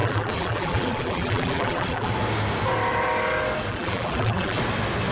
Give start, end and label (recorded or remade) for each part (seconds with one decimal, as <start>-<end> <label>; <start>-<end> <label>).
0.0-2.1 remade; 2.1-3.7 recorded; 3.7-4.6 remade; 4.6-5.1 recorded